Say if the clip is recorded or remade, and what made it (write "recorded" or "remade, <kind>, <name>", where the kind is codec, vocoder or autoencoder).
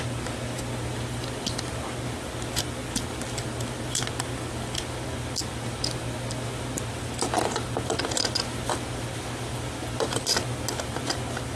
recorded